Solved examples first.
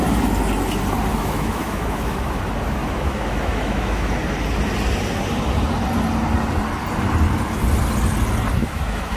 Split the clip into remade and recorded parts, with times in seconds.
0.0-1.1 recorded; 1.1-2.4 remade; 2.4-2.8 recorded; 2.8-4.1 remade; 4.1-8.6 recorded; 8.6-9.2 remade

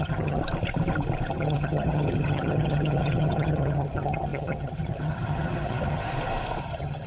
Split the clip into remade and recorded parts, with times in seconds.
0.0-0.4 remade; 0.4-1.3 recorded; 1.3-6.0 remade; 6.0-6.6 recorded; 6.6-7.1 remade

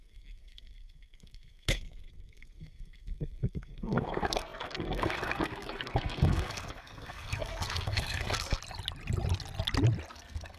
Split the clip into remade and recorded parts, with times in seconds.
0.0-8.6 remade; 8.6-10.1 recorded; 10.1-10.6 remade

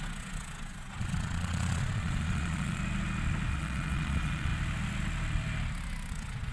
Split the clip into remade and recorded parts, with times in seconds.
0.0-2.8 remade; 2.8-3.5 recorded; 3.5-4.5 remade; 4.5-6.1 recorded; 6.1-6.5 remade

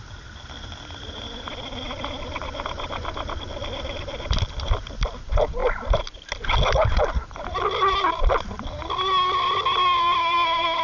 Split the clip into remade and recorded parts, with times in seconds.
0.0-5.6 recorded; 5.6-6.2 remade; 6.2-10.8 recorded